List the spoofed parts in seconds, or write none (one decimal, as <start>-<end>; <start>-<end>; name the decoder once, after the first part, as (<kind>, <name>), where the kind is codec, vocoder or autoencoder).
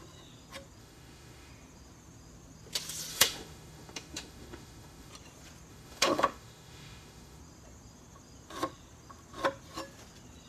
0.8-1.5 (autoencoder, DAC-VAE); 3.1-5.1; 5.7-7.4